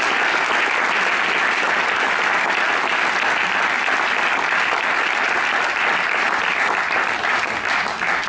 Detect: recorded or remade recorded